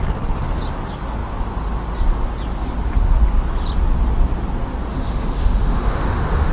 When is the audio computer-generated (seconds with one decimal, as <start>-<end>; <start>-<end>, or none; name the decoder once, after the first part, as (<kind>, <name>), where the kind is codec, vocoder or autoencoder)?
4.9-6.5 (autoencoder, DAC-VAE)